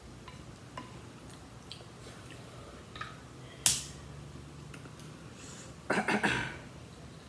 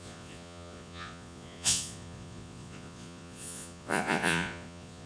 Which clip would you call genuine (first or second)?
first